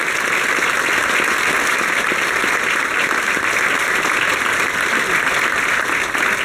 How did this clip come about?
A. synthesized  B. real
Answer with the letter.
B